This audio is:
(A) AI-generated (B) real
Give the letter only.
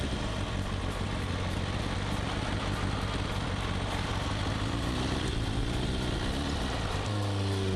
B